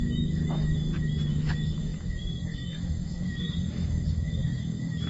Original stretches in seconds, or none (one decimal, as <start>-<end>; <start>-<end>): 0.7-1.3